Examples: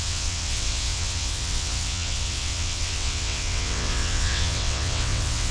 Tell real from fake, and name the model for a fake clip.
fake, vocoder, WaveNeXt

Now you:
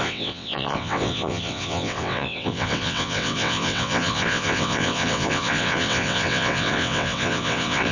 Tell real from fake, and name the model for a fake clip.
fake, vocoder, WaveNeXt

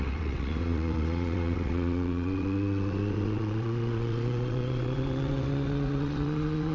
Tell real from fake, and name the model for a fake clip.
fake, vocoder, WaveNeXt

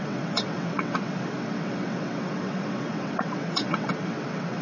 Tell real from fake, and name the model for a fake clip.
fake, vocoder, WaveNeXt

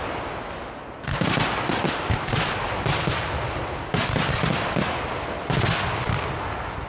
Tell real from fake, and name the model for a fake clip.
real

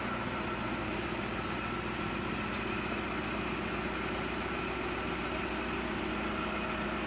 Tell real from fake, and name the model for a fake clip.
real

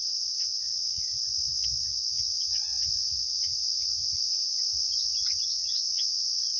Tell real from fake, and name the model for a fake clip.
fake, vocoder, WaveNeXt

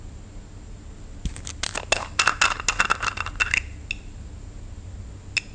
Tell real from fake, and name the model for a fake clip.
real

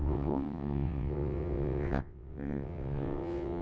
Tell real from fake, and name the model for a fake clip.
fake, vocoder, WaveNeXt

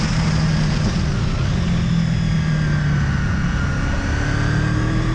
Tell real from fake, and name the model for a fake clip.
real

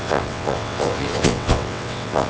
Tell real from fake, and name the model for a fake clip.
fake, vocoder, WaveNeXt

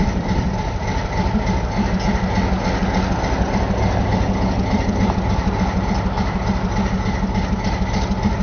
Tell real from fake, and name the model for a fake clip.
real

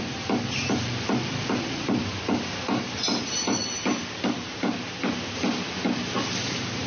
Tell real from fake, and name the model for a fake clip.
real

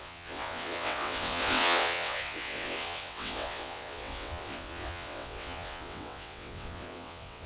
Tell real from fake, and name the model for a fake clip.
fake, vocoder, WaveNeXt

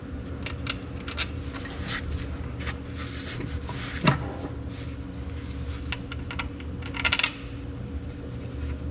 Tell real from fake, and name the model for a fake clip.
real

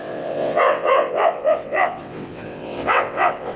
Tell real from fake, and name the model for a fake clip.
fake, vocoder, WaveNeXt